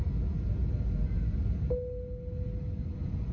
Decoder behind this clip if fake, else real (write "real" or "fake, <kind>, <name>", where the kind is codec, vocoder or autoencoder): real